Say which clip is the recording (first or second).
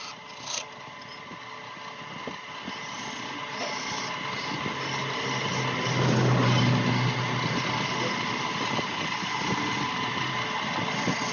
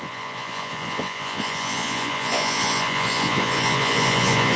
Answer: first